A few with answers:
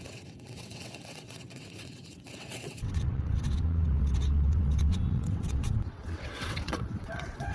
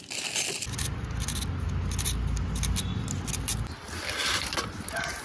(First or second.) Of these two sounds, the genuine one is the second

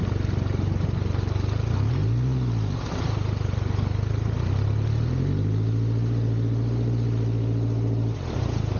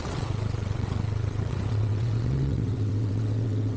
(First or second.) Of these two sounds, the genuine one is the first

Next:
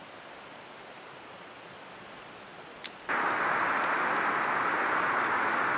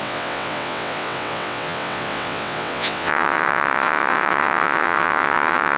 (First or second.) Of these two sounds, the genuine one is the first